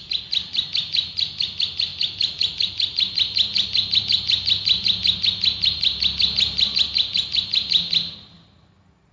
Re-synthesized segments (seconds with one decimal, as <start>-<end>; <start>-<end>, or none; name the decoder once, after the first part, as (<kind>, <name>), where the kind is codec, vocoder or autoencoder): none